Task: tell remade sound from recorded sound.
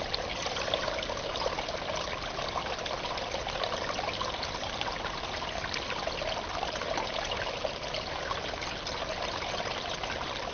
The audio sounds recorded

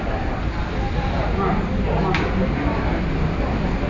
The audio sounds recorded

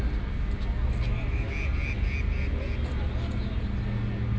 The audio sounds recorded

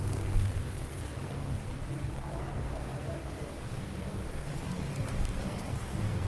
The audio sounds remade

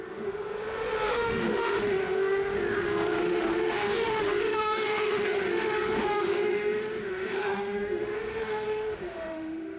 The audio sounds remade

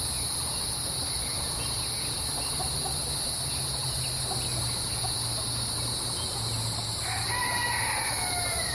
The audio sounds recorded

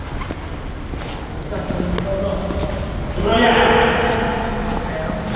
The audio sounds recorded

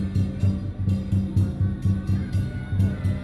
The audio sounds recorded